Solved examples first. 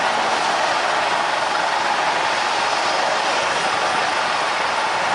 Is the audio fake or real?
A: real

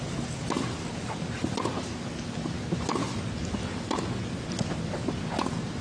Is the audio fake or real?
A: real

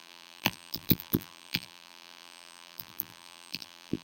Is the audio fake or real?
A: fake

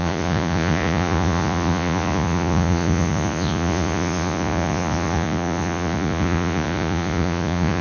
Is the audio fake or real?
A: fake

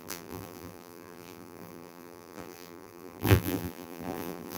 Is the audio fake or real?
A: fake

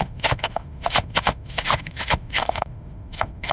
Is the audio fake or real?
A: fake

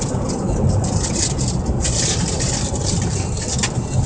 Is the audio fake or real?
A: real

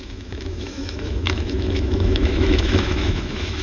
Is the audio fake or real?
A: fake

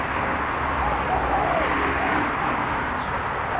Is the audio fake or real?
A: real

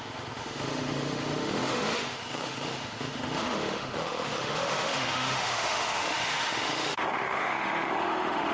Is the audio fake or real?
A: fake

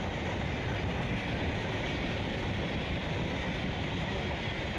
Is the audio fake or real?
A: fake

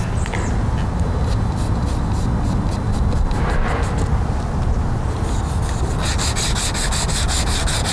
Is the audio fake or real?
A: real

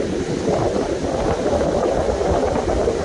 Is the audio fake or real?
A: real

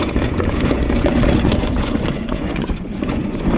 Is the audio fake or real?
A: fake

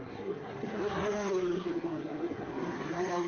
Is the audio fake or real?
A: fake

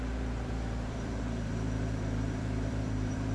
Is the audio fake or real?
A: fake